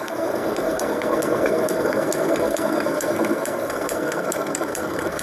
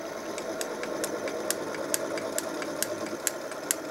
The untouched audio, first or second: second